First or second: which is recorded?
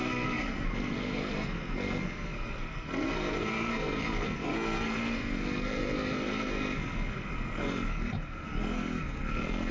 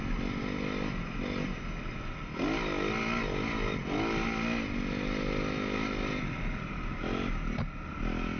second